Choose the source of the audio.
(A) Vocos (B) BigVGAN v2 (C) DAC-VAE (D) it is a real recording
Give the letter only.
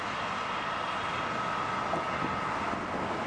D